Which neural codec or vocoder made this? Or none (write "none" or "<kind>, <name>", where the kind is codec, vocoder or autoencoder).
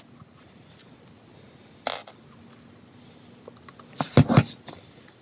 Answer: none